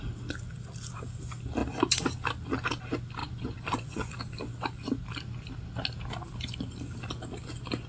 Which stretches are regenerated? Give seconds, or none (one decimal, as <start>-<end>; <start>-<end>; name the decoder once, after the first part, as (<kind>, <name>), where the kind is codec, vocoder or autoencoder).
3.2-4.1 (vocoder, Vocos)